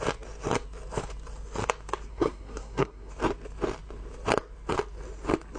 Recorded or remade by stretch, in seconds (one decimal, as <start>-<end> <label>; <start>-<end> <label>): 0.0-2.1 recorded; 2.1-3.1 remade; 3.1-5.6 recorded